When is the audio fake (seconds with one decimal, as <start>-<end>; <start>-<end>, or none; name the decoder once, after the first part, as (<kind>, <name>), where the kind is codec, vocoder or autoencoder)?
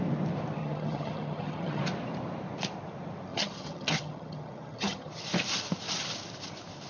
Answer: 0.6-1.8 (vocoder, HiFi-GAN); 3.3-5.1